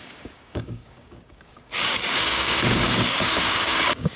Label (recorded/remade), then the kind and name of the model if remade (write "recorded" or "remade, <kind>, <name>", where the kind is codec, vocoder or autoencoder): remade, codec, DAC